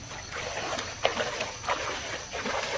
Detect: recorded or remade recorded